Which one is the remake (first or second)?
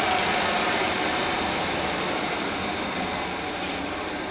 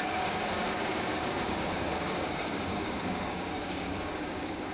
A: second